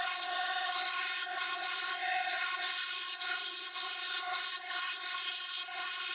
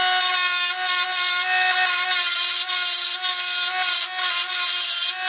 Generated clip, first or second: first